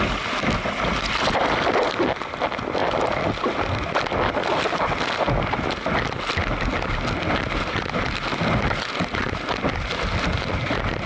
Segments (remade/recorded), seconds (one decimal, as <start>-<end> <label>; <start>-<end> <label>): 0.0-11.1 recorded